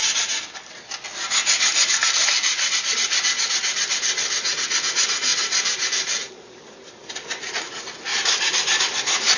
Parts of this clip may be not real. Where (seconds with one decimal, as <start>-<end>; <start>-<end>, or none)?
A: 1.7-2.3; 8.1-8.8